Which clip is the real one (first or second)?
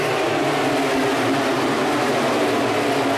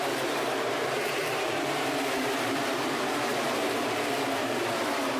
first